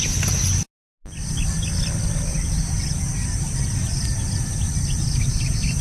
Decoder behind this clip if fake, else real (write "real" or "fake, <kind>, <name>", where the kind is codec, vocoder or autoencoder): real